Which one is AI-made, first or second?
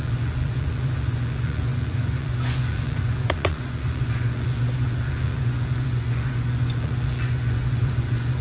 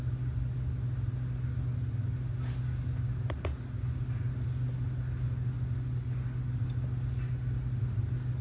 first